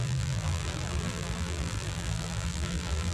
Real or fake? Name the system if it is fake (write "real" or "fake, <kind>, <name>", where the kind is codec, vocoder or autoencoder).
fake, vocoder, BigVGAN v2